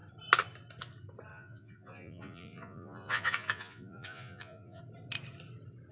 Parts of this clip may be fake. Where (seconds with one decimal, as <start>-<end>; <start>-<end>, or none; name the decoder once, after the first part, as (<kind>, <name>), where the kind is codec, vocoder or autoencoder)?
1.3-4.8 (vocoder, Vocos)